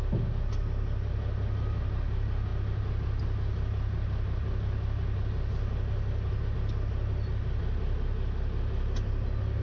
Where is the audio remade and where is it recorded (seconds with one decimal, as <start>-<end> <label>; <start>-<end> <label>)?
0.0-9.6 recorded